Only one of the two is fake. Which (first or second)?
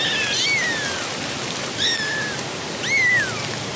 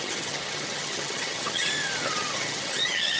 second